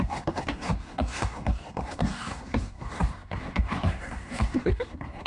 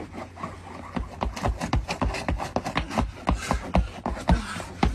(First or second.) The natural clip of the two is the second